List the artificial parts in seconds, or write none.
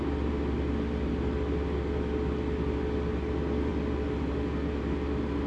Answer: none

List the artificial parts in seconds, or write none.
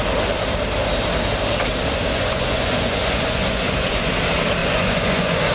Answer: 2.1-4.1 (vocoder, Vocos); 4.6-5.5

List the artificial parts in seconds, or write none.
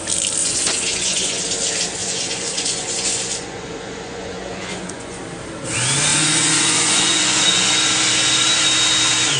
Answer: 0.4-1.4 (vocoder, Vocos); 2.0-5.2; 6.1-7.7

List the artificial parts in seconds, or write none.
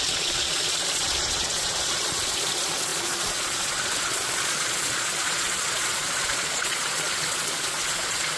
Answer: 0.0-8.4 (vocoder, Vocos)